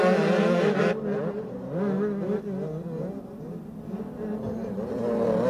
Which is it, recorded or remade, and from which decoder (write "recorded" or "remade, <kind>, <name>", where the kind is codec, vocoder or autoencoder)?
recorded